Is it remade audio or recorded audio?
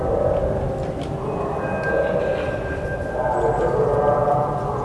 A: recorded